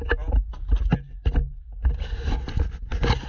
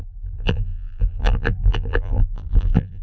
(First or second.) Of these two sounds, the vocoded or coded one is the second